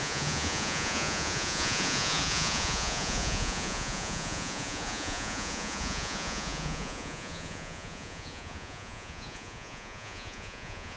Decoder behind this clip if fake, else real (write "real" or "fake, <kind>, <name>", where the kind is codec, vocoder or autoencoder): fake, vocoder, Vocos